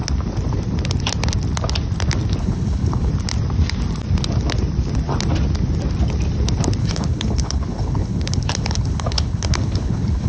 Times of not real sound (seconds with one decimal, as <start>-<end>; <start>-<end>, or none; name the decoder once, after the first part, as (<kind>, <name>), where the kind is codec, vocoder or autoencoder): 2.4-3.1 (codec, HILCodec); 6.8-10.3